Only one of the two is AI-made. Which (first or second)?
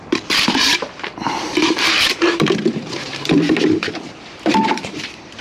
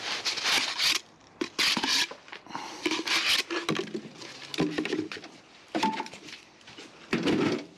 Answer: first